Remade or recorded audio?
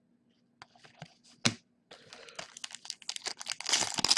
recorded